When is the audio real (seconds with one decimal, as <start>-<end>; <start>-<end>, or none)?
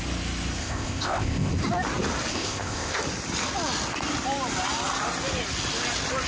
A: 0.0-0.6; 1.5-2.3; 3.0-6.3